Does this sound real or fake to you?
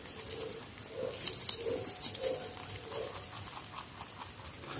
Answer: real